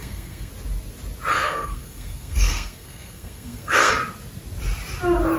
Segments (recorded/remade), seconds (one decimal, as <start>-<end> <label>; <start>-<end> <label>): 0.0-0.5 remade; 0.5-1.3 recorded; 1.3-3.9 remade; 3.9-5.4 recorded